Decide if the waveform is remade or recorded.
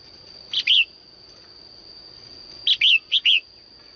recorded